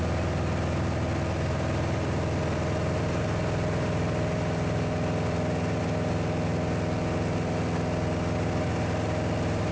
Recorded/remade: recorded